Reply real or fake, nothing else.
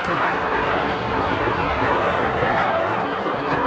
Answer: fake